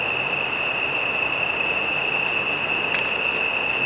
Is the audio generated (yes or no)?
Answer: no